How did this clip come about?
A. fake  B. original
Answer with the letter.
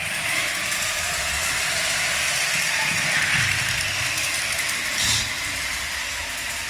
B